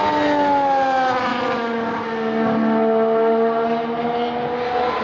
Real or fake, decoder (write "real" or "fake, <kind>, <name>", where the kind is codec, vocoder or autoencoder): real